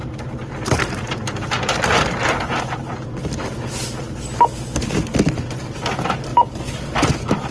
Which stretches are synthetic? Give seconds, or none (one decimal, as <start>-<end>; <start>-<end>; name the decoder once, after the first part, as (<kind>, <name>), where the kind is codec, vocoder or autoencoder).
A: 0.0-0.5 (vocoder, BigVGAN v2); 6.3-7.1